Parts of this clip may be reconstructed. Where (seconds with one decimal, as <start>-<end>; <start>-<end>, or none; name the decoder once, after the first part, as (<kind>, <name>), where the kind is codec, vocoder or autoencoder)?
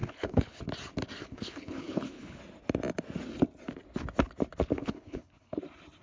0.0-0.6 (codec, HILCodec); 1.2-2.4; 4.7-5.6